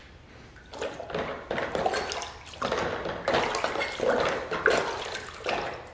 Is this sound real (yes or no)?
yes